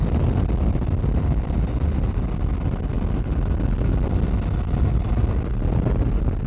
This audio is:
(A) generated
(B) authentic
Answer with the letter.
B